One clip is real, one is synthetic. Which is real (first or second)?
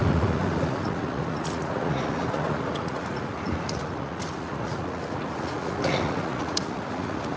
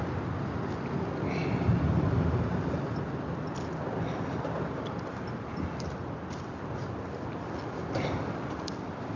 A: second